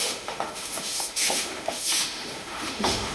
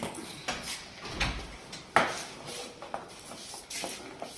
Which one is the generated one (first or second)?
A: first